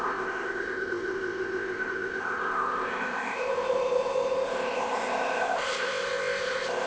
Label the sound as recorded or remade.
remade